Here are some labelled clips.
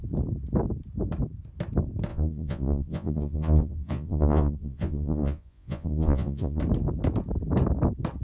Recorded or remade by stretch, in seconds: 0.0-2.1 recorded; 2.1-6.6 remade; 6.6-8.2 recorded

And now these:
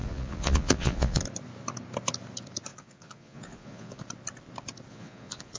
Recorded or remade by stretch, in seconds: 0.0-1.2 remade; 1.2-2.7 recorded; 2.7-4.0 remade; 4.0-4.9 recorded; 4.9-5.6 remade

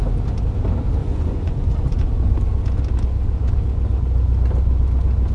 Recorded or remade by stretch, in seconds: 0.0-1.0 recorded; 1.0-2.1 remade; 2.1-5.3 recorded

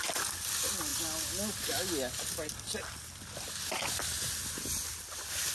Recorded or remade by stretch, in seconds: 0.0-5.5 recorded

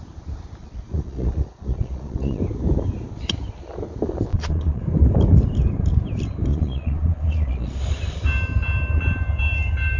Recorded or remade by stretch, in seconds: 0.0-0.6 recorded; 0.6-2.4 remade; 2.4-4.3 recorded; 4.3-4.8 remade; 4.8-6.5 recorded; 6.5-7.8 remade; 7.8-10.0 recorded

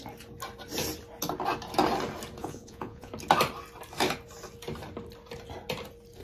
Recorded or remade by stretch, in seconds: 0.0-2.4 recorded; 2.4-3.1 remade; 3.1-6.2 recorded